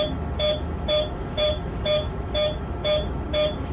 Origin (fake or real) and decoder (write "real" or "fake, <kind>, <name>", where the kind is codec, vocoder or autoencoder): fake, autoencoder, DAC-VAE